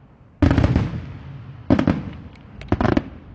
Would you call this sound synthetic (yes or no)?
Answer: no